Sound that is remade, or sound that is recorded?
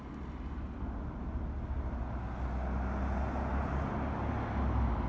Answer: recorded